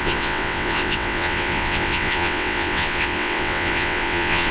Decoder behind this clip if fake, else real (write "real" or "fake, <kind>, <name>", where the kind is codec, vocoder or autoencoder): fake, vocoder, WaveNeXt